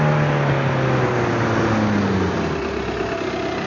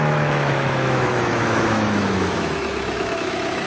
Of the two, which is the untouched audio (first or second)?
first